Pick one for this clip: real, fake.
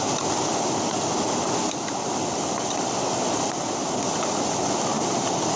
real